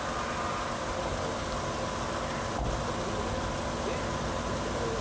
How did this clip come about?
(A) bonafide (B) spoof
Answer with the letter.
A